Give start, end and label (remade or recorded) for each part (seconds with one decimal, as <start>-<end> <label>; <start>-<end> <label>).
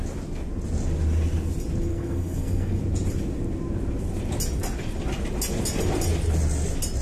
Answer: 0.0-1.9 recorded; 1.9-2.8 remade; 2.8-7.0 recorded